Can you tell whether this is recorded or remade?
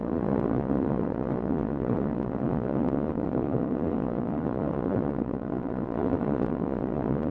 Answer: remade